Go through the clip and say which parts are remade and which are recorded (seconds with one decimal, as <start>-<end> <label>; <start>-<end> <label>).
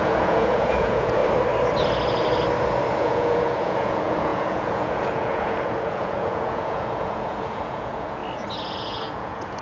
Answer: 0.0-1.2 remade; 1.2-3.0 recorded; 3.0-8.2 remade; 8.2-8.7 recorded; 8.7-9.6 remade